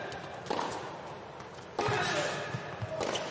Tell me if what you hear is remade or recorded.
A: recorded